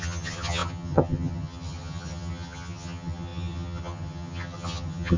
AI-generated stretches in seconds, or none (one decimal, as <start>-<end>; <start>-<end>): 0.0-5.2